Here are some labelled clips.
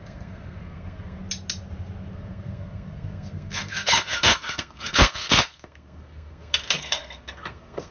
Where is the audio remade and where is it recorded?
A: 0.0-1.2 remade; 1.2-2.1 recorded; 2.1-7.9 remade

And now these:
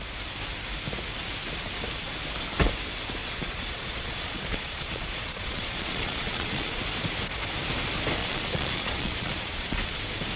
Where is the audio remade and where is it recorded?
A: 0.0-3.2 recorded; 3.2-6.8 remade; 6.8-8.2 recorded; 8.2-10.0 remade; 10.0-10.4 recorded